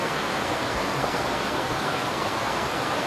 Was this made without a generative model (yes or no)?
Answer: no